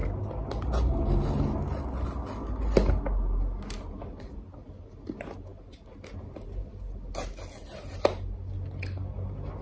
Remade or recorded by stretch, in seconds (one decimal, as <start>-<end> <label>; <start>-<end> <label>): 0.0-9.6 recorded